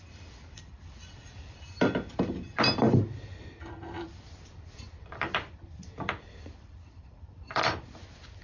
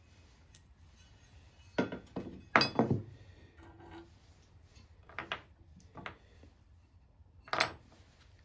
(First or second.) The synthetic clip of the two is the first